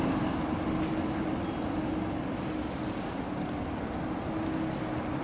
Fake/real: real